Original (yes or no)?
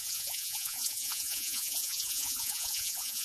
no